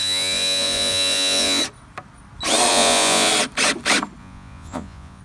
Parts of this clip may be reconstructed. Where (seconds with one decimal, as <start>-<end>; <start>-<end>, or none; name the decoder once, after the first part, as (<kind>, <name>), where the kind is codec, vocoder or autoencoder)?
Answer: 0.0-1.6 (vocoder, Vocos); 2.7-3.3; 4.2-5.2